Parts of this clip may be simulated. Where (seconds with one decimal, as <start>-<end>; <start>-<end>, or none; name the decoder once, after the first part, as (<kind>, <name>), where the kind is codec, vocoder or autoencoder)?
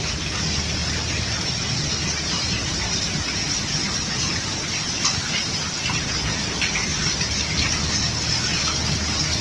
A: 0.8-5.0 (vocoder, BigVGAN v2); 6.9-7.7